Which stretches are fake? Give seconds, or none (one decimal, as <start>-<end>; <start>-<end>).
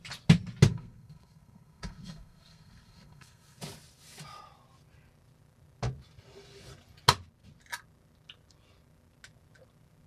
0.7-3.6